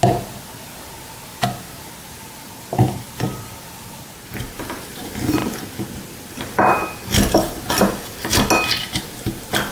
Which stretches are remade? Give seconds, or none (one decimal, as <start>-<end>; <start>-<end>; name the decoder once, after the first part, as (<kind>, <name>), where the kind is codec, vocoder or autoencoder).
none